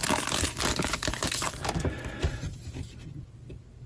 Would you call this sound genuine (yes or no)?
yes